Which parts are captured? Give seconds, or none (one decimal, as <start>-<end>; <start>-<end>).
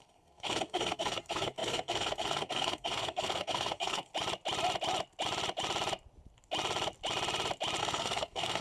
4.1-7.8